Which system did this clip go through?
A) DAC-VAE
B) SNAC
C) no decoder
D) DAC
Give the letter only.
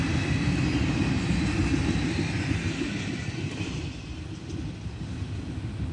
C